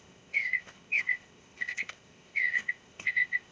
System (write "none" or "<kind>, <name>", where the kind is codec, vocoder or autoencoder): codec, ZipCodec